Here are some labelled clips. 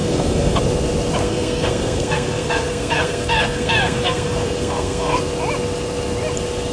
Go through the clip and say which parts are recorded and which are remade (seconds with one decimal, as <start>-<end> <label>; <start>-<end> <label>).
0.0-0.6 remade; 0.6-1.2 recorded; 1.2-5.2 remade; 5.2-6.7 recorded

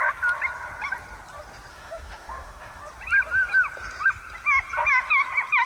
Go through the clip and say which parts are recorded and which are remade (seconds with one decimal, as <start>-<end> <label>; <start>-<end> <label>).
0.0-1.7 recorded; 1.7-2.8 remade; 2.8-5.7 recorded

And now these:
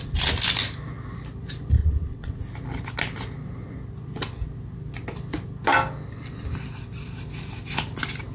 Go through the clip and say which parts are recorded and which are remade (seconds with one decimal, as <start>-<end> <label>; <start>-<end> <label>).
0.0-1.8 recorded; 1.8-2.4 remade; 2.4-8.3 recorded

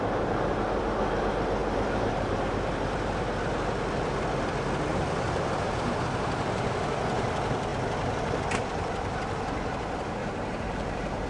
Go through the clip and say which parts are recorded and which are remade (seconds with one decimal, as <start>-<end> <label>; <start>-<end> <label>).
0.0-1.6 recorded; 1.6-2.4 remade; 2.4-4.9 recorded; 4.9-6.7 remade; 6.7-10.2 recorded; 10.2-11.3 remade

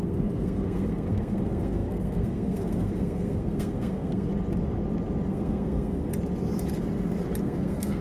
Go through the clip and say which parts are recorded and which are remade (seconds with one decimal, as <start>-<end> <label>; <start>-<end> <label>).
0.0-4.3 remade; 4.3-5.3 recorded; 5.3-6.1 remade; 6.1-7.4 recorded; 7.4-8.0 remade

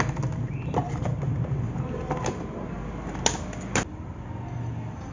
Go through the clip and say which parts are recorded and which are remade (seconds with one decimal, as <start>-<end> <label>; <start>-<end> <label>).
0.0-5.1 recorded

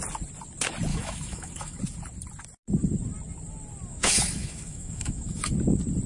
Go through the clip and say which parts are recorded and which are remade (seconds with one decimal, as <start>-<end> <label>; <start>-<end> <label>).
0.0-0.9 recorded; 0.9-1.8 remade; 1.8-3.9 recorded; 3.9-5.5 remade; 5.5-6.1 recorded

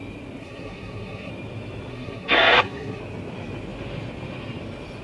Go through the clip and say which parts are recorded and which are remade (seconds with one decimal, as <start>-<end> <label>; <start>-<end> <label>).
0.0-0.4 recorded; 0.4-1.3 remade; 1.3-1.9 recorded; 1.9-3.0 remade; 3.0-5.0 recorded